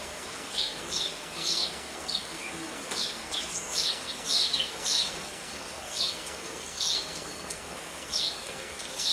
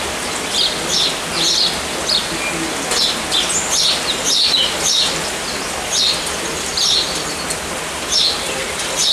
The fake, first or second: first